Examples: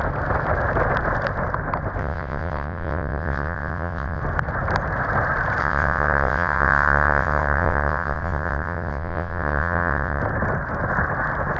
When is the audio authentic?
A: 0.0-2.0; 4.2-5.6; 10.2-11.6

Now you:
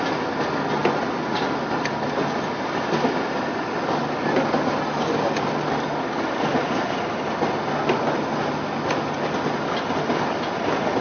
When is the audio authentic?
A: 0.0-11.0